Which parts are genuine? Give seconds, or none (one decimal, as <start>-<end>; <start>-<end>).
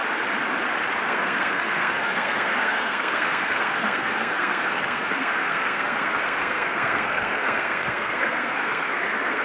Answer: 0.0-1.0